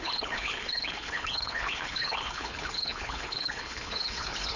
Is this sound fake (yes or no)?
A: yes